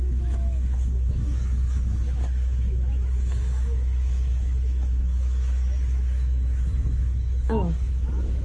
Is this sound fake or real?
fake